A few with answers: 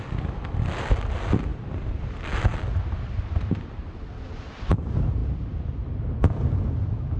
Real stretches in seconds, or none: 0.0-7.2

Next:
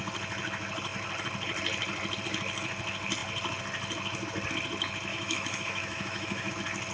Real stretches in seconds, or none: 0.0-5.1; 6.5-6.9

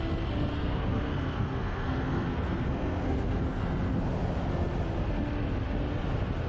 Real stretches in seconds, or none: 0.0-0.5; 3.4-6.5

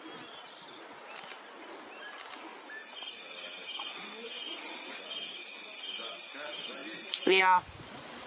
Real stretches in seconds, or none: 0.0-8.3

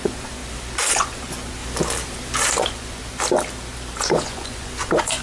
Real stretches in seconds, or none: 0.4-0.9; 1.6-2.6; 3.0-4.0

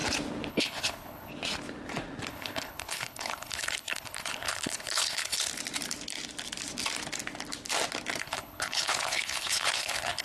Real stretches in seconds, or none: 0.0-0.5; 1.3-2.3; 5.5-8.2